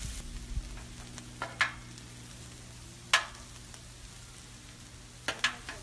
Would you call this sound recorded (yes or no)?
yes